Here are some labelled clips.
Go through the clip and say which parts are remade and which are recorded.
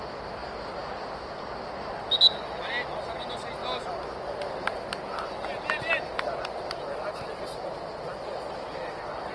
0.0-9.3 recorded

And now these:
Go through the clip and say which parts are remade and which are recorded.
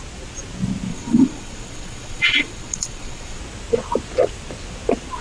0.0-0.9 recorded; 0.9-3.4 remade; 3.4-5.2 recorded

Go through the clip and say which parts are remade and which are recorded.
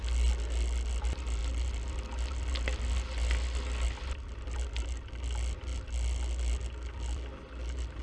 0.0-8.0 recorded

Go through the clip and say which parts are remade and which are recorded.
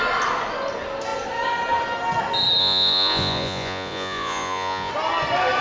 0.0-2.6 recorded; 2.6-4.9 remade; 4.9-5.6 recorded